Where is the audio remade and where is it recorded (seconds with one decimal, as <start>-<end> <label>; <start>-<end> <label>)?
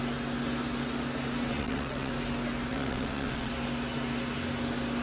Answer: 0.0-1.5 recorded; 1.5-2.1 remade; 2.1-2.7 recorded; 2.7-3.5 remade; 3.5-5.0 recorded